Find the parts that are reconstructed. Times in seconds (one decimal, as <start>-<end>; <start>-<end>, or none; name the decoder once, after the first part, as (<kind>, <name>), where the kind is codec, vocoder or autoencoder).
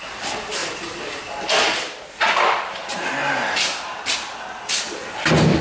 0.6-1.6 (vocoder, BigVGAN v2); 3.2-4.1